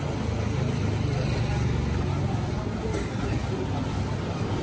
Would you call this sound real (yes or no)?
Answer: yes